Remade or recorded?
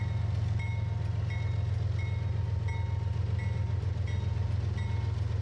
recorded